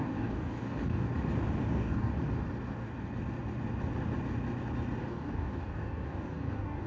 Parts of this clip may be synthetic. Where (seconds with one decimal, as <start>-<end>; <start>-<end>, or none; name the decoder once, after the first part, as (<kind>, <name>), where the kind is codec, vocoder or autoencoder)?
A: 0.0-1.1 (codec, DAC); 1.7-2.1; 5.0-6.9